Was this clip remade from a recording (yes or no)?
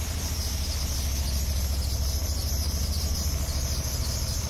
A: no